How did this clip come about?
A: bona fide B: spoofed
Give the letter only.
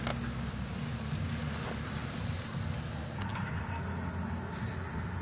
A